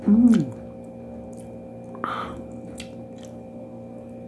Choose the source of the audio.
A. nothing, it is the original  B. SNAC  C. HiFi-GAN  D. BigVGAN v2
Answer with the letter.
A